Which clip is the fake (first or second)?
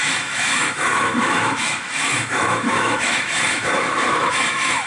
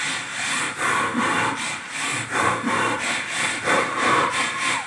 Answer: first